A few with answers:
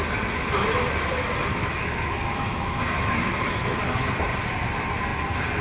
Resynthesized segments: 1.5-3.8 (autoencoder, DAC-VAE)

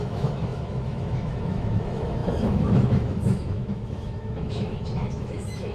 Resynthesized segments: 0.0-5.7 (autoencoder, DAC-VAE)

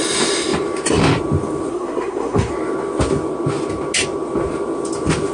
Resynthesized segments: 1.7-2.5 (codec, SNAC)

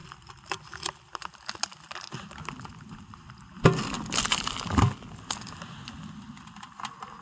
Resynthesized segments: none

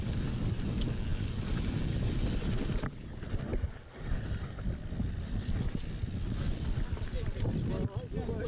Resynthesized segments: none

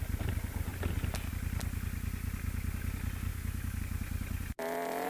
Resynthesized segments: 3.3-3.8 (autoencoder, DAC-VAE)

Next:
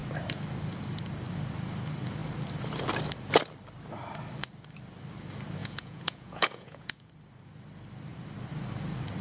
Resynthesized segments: 5.6-7.1 (vocoder, Vocos)